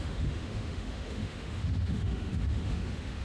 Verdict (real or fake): fake